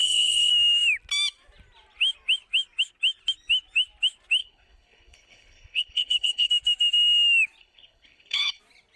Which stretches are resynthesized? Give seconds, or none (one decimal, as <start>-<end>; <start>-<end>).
0.0-0.5; 4.4-6.5; 7.6-8.6